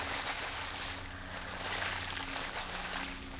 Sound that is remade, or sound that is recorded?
recorded